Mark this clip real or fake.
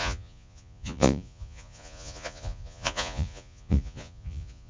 fake